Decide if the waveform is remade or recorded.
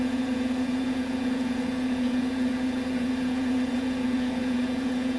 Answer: remade